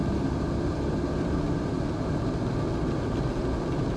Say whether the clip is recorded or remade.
recorded